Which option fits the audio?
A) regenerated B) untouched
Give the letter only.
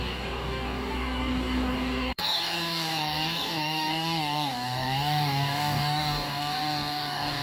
A